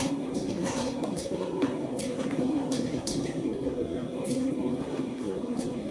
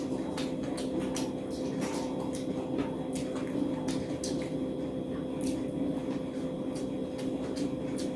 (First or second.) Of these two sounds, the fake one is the first